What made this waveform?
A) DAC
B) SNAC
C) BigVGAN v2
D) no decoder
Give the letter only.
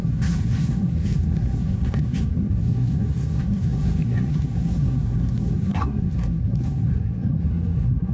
B